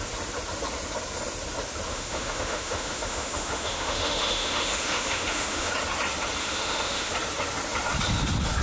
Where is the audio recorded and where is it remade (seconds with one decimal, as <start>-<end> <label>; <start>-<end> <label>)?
0.0-1.9 recorded; 1.9-5.7 remade; 5.7-6.4 recorded; 6.4-7.1 remade; 7.1-8.6 recorded